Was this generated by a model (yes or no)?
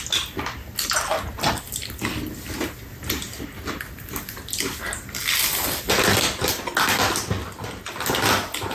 no